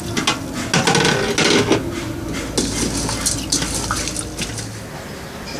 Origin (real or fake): real